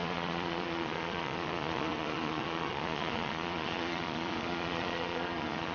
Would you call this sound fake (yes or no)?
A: yes